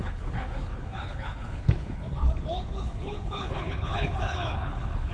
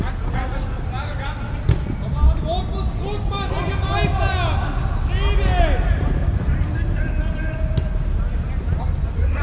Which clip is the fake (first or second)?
first